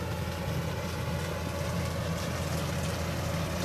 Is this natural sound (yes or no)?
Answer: yes